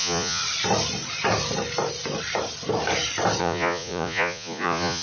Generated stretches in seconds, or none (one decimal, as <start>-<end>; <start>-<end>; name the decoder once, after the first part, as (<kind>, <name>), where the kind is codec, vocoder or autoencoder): 0.0-0.4 (vocoder, Vocos); 3.4-5.0